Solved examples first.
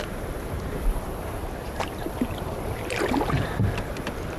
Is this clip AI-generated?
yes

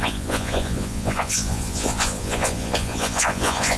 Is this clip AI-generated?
yes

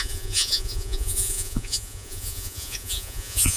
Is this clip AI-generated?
yes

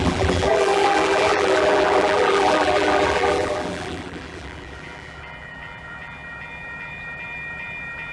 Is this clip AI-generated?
yes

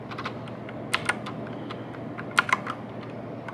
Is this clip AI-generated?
no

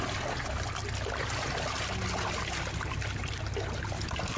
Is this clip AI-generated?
no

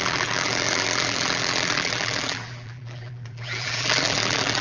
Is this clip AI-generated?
yes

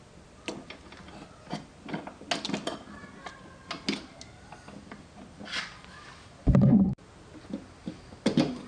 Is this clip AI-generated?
no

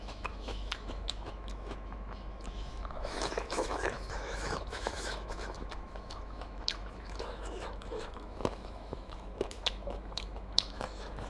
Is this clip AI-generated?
yes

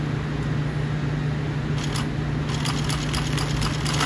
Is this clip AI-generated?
no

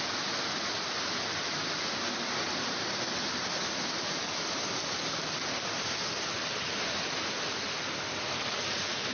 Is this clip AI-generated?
no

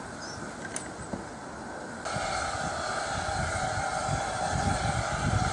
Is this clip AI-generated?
no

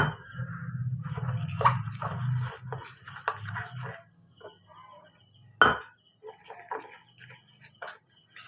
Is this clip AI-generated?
no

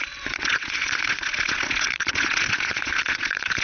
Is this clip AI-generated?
yes